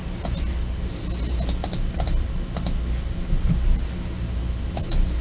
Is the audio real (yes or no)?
yes